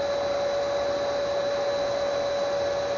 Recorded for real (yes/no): yes